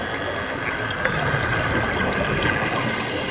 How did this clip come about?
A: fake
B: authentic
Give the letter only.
B